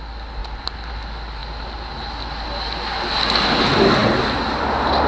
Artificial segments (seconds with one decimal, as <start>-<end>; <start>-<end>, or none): none